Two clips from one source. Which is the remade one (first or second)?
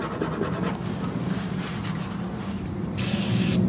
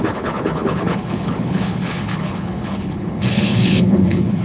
second